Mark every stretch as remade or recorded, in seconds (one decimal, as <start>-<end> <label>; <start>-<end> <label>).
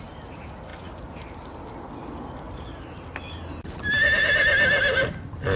0.0-5.6 recorded